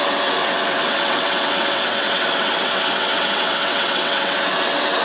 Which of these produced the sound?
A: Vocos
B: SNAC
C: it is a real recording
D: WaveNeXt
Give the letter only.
D